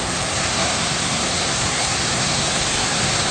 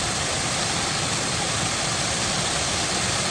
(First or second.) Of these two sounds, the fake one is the first